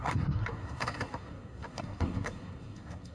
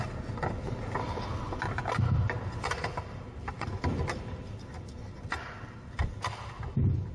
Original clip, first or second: second